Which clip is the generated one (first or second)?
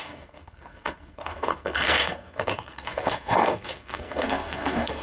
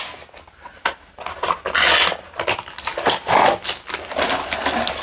first